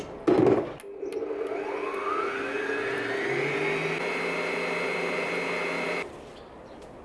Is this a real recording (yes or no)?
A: yes